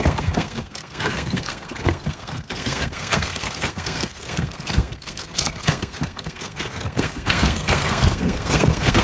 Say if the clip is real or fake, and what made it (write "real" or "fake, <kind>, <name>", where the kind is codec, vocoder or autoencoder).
fake, codec, SNAC